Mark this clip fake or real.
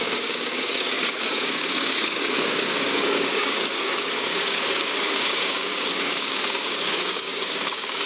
fake